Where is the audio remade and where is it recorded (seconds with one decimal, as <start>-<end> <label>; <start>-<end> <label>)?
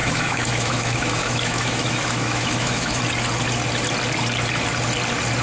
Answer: 0.0-3.0 remade; 3.0-5.4 recorded